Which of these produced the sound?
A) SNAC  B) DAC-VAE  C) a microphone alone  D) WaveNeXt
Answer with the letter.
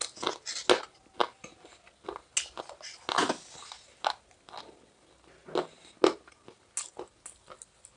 C